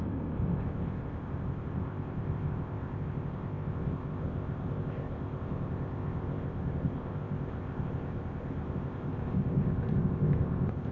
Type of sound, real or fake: fake